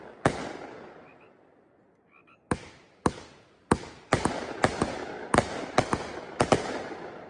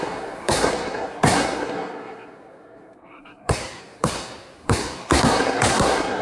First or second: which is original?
first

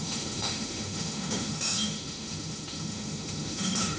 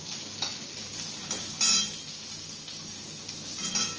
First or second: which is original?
second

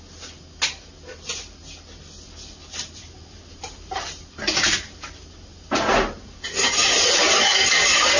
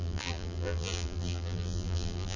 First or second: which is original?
first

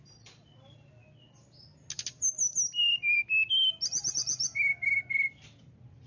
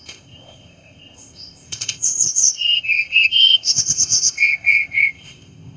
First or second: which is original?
first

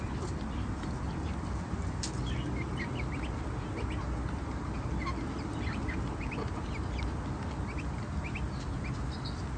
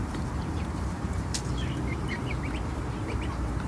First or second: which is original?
first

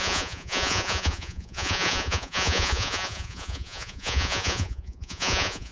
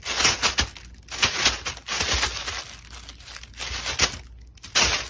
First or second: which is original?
second